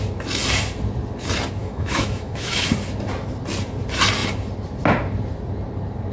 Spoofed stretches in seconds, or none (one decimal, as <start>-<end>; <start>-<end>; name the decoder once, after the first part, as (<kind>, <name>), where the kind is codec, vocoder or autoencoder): 1.6-2.7 (autoencoder, DAC-VAE)